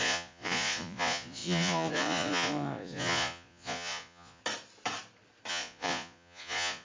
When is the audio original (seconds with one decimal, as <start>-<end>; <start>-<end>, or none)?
4.4-5.5